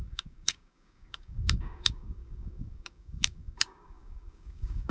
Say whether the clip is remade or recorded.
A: remade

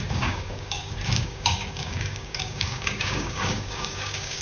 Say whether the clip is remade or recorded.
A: remade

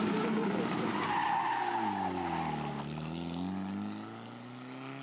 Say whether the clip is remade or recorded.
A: recorded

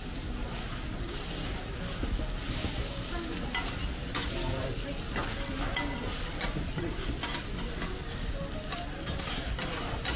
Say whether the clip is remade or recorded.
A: recorded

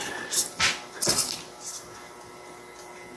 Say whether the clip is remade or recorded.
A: recorded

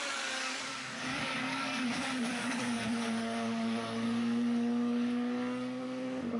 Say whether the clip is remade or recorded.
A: remade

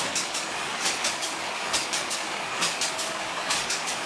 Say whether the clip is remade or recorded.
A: remade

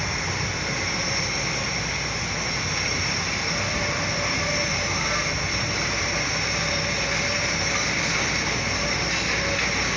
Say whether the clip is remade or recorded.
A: recorded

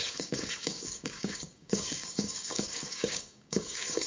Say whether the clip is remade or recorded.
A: remade